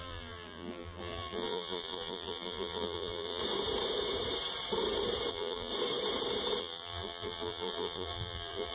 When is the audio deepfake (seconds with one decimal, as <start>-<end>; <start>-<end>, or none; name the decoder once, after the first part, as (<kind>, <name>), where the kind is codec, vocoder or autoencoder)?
0.0-3.4 (vocoder, BigVGAN v2); 5.3-5.7; 6.6-8.7